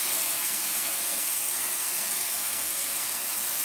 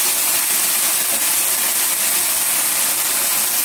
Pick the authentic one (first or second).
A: second